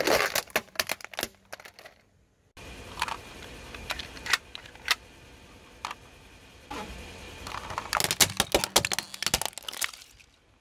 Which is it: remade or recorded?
recorded